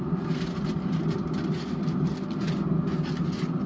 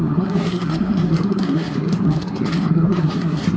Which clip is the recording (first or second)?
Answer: first